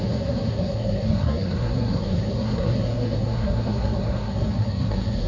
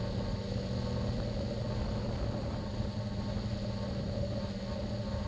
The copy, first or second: first